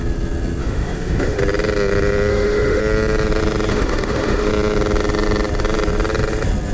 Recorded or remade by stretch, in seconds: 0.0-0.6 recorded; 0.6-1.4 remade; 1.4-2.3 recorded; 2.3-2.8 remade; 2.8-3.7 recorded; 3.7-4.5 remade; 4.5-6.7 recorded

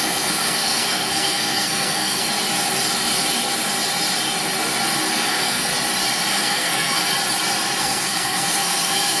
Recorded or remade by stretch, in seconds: 0.0-2.3 remade; 2.3-5.1 recorded; 5.1-5.7 remade; 5.7-6.3 recorded; 6.3-7.1 remade; 7.1-7.8 recorded; 7.8-9.2 remade

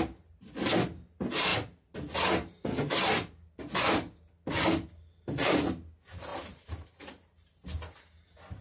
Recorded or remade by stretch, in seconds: 0.0-6.3 recorded; 6.3-7.5 remade; 7.5-8.6 recorded

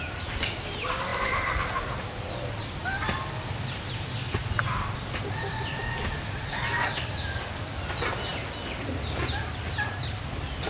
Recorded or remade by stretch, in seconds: 0.0-10.7 recorded

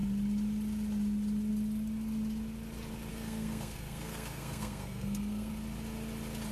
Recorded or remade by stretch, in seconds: 0.0-3.1 recorded; 3.1-5.5 remade; 5.5-6.5 recorded